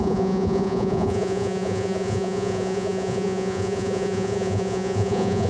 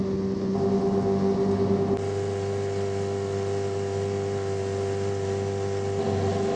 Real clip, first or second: second